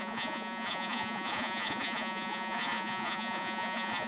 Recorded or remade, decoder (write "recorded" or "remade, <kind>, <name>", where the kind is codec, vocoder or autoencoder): remade, vocoder, Vocos